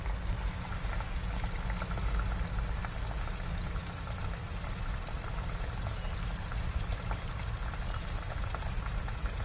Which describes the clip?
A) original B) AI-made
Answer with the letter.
A